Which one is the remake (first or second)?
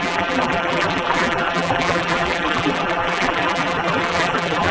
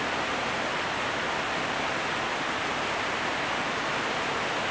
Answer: first